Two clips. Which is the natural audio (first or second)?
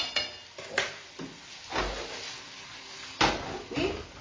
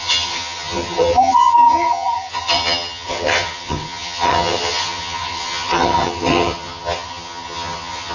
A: first